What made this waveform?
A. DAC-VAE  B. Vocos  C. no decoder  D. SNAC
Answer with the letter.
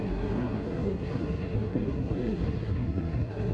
D